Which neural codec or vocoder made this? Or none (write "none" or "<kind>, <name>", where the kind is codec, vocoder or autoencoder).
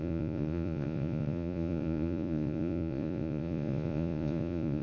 vocoder, Vocos